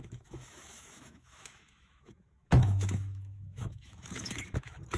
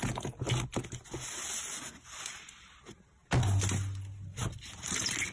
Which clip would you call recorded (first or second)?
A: second